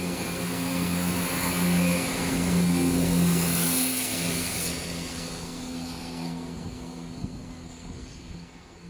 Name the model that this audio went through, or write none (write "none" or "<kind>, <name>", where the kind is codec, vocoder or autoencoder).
codec, SNAC